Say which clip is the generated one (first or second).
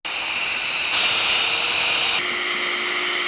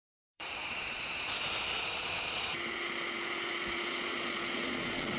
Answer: second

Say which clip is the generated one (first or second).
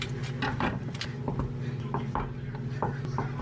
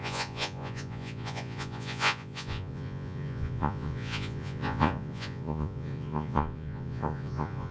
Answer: second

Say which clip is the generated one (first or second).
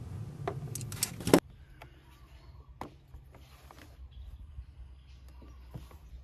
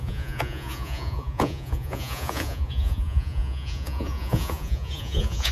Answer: second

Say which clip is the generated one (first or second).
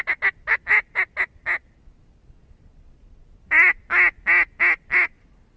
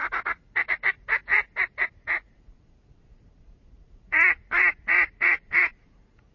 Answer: second